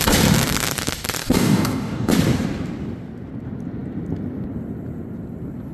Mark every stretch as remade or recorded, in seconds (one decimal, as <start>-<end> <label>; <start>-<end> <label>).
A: 0.0-1.2 recorded; 1.2-2.1 remade; 2.1-5.7 recorded

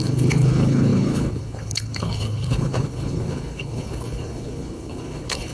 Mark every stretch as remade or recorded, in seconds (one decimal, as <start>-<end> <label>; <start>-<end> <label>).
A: 0.0-5.5 remade